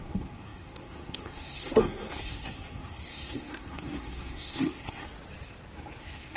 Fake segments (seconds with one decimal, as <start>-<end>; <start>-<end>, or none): 0.0-5.0; 6.0-6.4

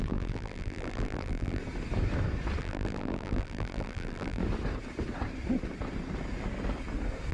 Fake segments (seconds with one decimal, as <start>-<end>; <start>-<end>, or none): 0.0-1.6; 2.6-4.4

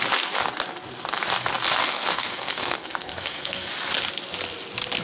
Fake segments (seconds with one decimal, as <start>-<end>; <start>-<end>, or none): 1.8-3.7

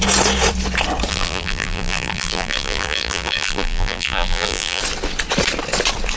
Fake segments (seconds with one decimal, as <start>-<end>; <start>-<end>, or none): 1.1-4.8